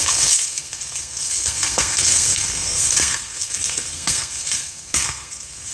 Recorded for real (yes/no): no